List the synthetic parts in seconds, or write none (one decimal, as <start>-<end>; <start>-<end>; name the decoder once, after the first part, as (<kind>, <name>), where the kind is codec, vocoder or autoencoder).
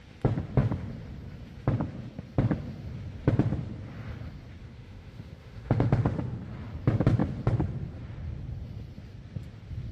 4.6-6.4 (autoencoder, DAC-VAE)